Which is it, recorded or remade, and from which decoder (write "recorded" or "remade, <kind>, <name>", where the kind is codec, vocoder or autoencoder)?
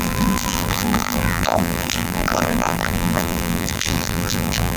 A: remade, vocoder, BigVGAN v2